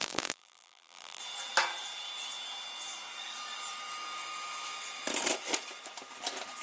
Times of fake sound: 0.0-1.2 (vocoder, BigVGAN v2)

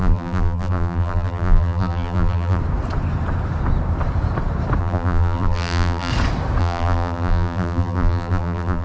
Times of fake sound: 0.0-2.6 (vocoder, BigVGAN v2); 4.8-6.1; 6.6-8.8

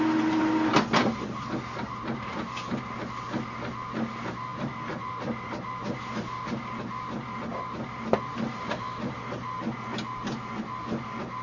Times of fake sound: none